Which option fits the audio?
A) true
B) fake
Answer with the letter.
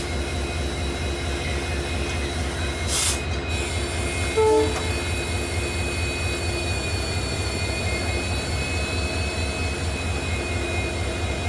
A